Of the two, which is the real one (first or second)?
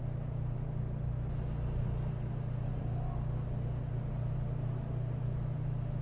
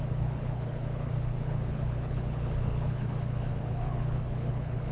first